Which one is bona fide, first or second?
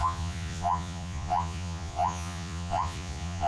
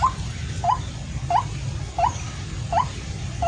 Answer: second